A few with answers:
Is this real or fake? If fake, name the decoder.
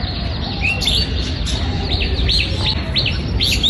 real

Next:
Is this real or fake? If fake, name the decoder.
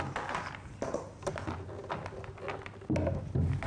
real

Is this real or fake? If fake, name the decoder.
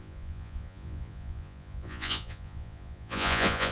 fake, vocoder, Vocos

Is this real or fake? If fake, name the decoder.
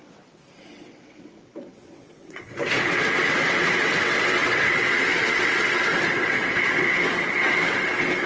fake, vocoder, WaveNeXt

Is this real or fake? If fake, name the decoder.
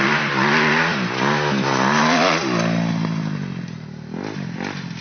real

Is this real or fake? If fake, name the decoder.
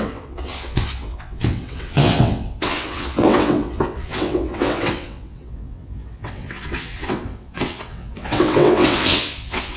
fake, vocoder, WaveNeXt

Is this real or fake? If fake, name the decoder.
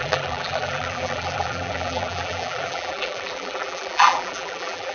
fake, vocoder, BigVGAN v2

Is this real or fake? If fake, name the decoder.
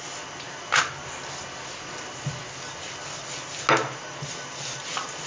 real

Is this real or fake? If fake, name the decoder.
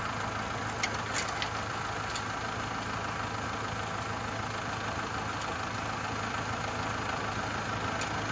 real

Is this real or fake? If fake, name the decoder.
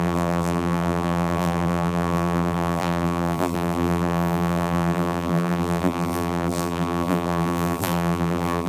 fake, vocoder, BigVGAN v2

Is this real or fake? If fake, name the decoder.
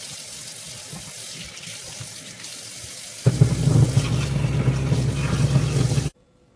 real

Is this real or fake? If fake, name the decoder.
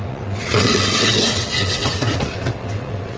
fake, vocoder, WaveNeXt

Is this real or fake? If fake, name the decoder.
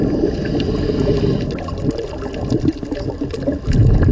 real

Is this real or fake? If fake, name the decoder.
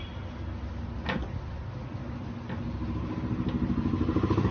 real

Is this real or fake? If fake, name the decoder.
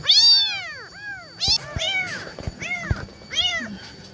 real